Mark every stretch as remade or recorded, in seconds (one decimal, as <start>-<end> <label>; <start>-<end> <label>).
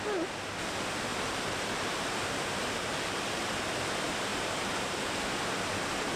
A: 0.0-1.1 recorded; 1.1-2.4 remade; 2.4-4.3 recorded; 4.3-5.5 remade; 5.5-6.2 recorded